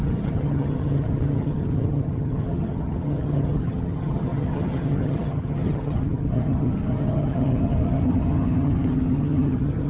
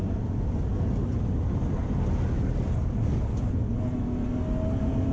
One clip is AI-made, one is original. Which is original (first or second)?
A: second